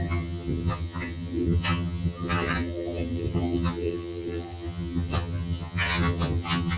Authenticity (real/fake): fake